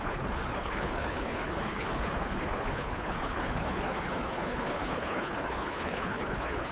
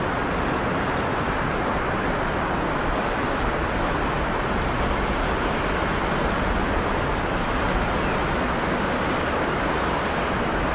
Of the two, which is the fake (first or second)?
first